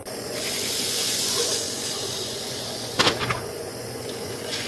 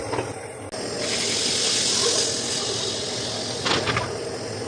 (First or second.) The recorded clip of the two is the second